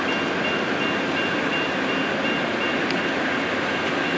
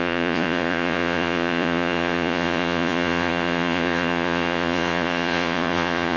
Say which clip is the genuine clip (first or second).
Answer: first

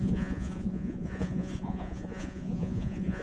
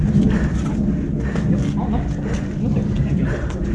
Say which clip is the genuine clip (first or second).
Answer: second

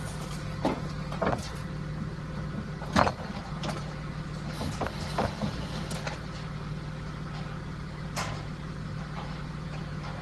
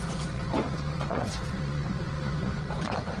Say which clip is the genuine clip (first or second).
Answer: first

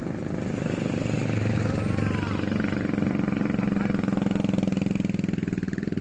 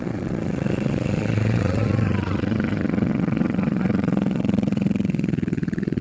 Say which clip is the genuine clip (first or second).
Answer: first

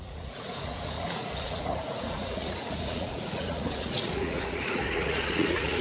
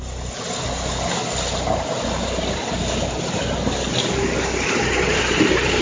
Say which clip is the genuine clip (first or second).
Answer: second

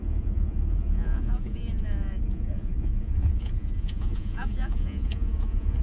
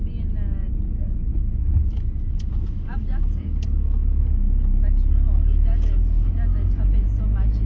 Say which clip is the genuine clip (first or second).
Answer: second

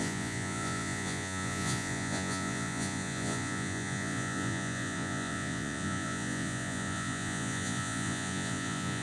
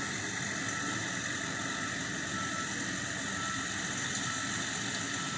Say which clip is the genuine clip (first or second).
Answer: second